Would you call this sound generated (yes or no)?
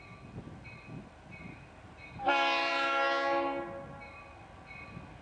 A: no